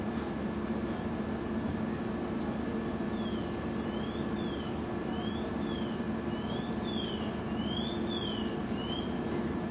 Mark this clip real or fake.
real